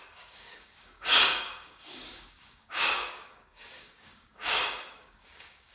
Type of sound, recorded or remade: remade